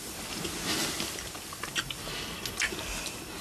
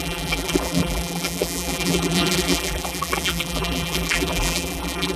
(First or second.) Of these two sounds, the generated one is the second